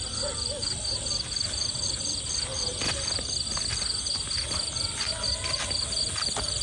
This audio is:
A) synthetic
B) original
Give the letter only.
B